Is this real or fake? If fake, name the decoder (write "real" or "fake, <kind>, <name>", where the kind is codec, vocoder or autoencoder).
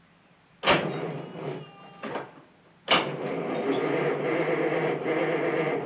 real